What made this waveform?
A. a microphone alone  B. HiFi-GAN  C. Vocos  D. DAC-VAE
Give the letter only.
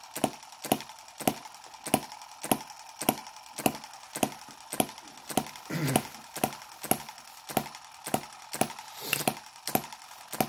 A